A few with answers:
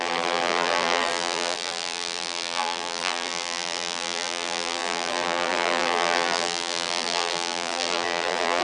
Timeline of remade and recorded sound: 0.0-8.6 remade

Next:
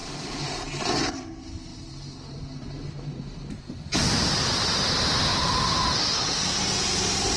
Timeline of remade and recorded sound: 0.0-1.1 remade; 1.1-5.3 recorded; 5.3-7.4 remade

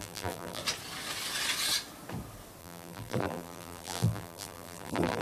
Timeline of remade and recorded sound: 0.0-0.6 remade; 0.6-2.6 recorded; 2.6-5.2 remade

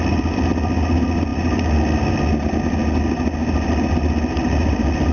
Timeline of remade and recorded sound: 0.0-5.1 recorded

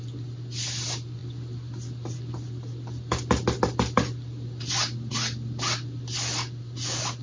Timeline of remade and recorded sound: 0.0-7.2 recorded

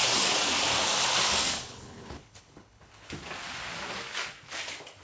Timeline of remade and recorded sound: 0.0-1.7 recorded; 1.7-3.1 remade; 3.1-5.0 recorded